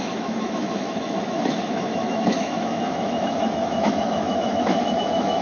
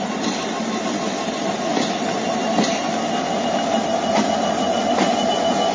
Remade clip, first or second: first